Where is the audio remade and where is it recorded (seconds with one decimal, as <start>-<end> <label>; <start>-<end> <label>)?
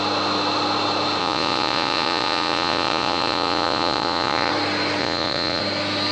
0.0-1.2 recorded; 1.2-4.5 remade; 4.5-5.0 recorded; 5.0-5.6 remade; 5.6-6.1 recorded